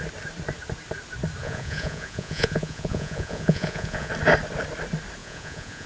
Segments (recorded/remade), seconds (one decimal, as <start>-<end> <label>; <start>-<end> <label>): 0.0-1.4 recorded; 1.4-4.1 remade; 4.1-5.2 recorded; 5.2-5.9 remade